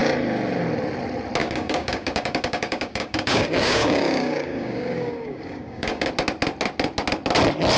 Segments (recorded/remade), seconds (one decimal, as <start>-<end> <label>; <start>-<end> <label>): 0.0-1.4 recorded; 1.4-6.1 remade; 6.1-7.8 recorded